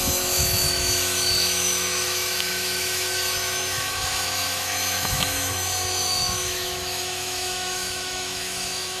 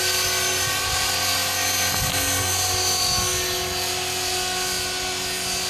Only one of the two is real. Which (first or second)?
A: second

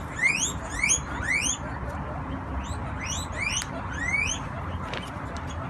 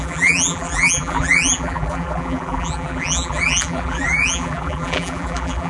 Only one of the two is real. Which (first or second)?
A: first